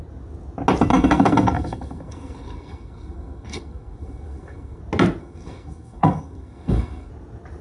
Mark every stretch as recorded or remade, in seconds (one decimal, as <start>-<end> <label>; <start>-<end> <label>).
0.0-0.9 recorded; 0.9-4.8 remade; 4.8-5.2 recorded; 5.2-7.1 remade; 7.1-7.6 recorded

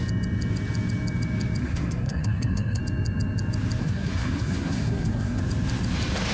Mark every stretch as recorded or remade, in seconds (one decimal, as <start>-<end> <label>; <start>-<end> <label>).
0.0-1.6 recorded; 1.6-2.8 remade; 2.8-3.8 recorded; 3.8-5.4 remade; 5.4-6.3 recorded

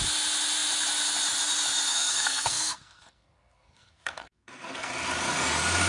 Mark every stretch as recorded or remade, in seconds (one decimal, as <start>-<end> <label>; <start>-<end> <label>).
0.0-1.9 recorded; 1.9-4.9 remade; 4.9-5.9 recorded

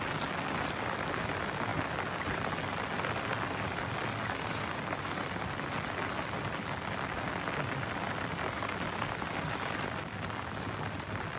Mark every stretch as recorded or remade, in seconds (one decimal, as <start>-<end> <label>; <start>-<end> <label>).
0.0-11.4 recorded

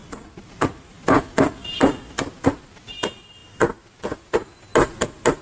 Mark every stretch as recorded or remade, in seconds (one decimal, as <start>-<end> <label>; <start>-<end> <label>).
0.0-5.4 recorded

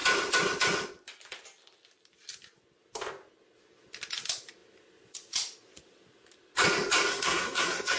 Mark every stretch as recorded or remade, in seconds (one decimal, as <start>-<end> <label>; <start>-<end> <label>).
0.0-7.1 recorded; 7.1-8.0 remade

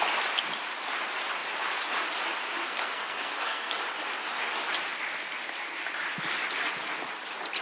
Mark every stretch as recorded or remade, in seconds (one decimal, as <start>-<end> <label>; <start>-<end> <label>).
0.0-2.6 recorded; 2.6-3.8 remade; 3.8-7.6 recorded